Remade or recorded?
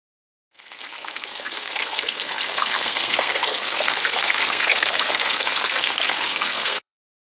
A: remade